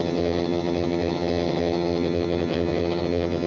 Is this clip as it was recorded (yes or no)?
no